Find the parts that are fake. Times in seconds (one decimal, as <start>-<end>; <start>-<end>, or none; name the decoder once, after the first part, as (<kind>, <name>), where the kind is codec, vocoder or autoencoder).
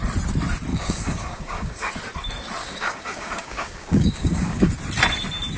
0.7-1.9 (codec, DAC); 2.6-4.7